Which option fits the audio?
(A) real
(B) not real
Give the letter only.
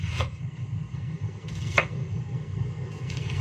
B